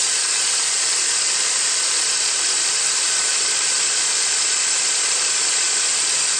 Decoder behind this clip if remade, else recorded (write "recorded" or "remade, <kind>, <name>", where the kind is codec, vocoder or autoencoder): recorded